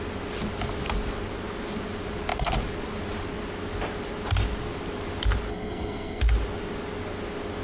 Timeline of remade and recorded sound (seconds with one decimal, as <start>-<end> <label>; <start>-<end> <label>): 0.0-5.5 recorded; 5.5-6.2 remade; 6.2-7.6 recorded